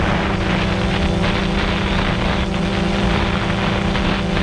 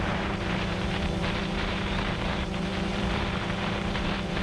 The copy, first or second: second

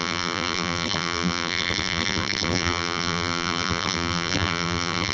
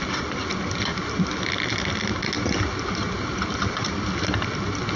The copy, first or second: first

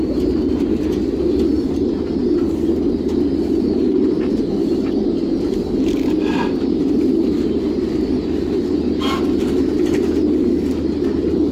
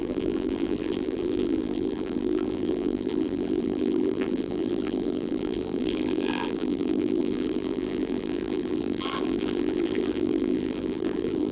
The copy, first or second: second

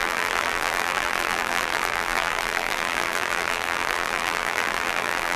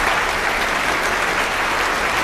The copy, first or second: first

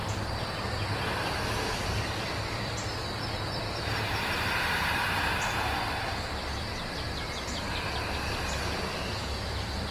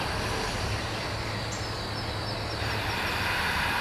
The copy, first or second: first